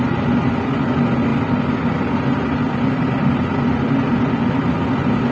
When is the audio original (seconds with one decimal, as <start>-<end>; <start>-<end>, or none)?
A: 0.0-5.3